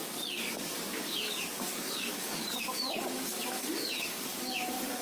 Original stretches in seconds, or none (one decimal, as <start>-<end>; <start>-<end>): none